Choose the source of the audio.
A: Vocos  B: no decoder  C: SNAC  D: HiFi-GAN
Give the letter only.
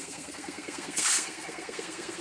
C